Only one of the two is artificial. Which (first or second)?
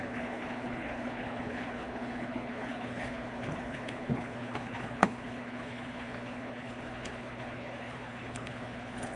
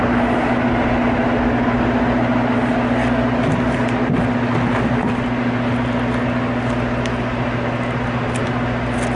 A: first